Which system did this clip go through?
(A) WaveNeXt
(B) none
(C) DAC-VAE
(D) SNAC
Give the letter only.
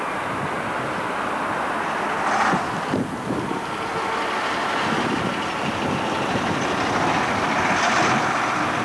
B